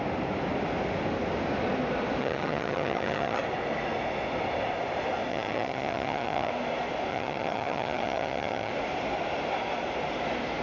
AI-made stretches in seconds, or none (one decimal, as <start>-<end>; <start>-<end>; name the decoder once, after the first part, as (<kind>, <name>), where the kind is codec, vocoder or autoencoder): 2.2-3.4 (vocoder, HiFi-GAN); 5.3-6.5; 7.1-8.7